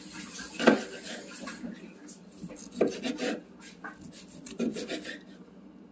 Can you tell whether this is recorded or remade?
recorded